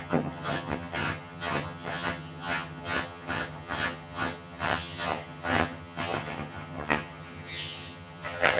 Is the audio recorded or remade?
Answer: remade